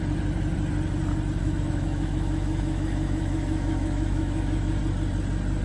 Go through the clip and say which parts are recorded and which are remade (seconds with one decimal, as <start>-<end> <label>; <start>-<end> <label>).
0.0-1.4 recorded; 1.4-4.8 remade; 4.8-5.6 recorded